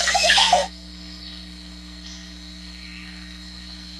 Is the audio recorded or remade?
remade